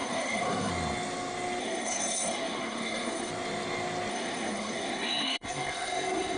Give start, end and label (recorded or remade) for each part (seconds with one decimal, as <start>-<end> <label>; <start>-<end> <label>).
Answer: 0.0-0.7 remade; 0.7-1.6 recorded; 1.6-3.3 remade; 3.3-4.1 recorded; 4.1-6.4 remade